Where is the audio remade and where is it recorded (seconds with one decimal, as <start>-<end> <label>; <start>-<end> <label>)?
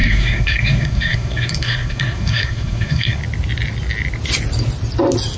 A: 0.0-3.2 remade; 3.2-5.4 recorded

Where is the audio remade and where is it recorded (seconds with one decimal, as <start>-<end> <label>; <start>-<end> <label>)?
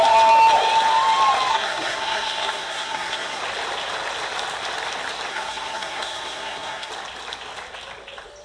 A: 0.0-1.5 recorded; 1.5-3.4 remade; 3.4-5.3 recorded; 5.3-6.9 remade; 6.9-8.4 recorded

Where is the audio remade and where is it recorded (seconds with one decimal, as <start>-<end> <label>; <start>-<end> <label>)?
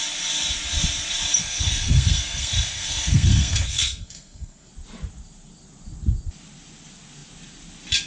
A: 0.0-1.4 recorded; 1.4-4.7 remade; 4.7-8.1 recorded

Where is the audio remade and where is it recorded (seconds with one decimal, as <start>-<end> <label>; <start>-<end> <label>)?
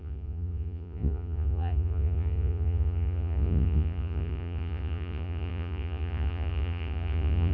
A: 0.0-7.5 remade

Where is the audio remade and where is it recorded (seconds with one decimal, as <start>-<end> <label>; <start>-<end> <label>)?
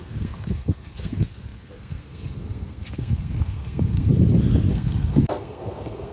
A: 0.0-4.1 remade; 4.1-4.7 recorded; 4.7-6.1 remade